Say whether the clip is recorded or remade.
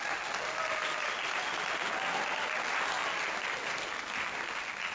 recorded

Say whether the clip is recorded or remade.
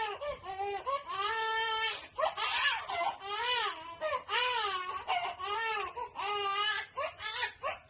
recorded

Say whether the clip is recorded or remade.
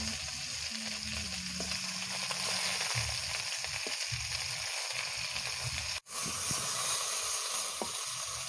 recorded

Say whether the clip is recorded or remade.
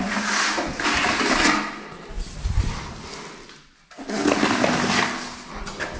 recorded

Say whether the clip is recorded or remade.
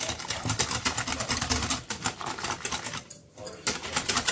recorded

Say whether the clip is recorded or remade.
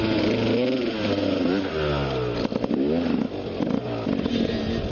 recorded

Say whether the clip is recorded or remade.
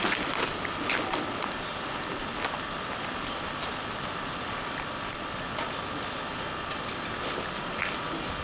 recorded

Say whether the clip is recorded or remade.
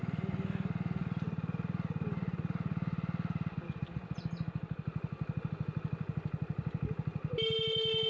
recorded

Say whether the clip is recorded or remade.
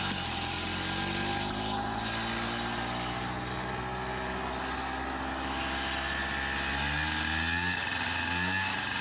recorded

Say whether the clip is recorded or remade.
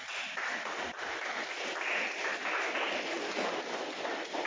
recorded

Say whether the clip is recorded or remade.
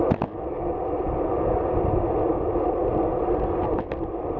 recorded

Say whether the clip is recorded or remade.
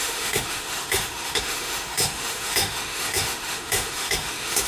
remade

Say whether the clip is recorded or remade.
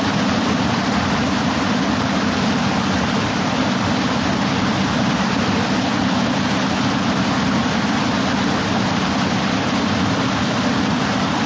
recorded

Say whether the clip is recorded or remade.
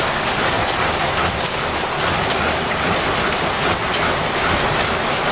recorded